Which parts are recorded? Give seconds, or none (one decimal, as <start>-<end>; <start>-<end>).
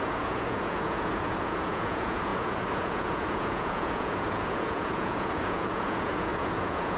none